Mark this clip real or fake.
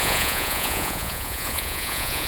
fake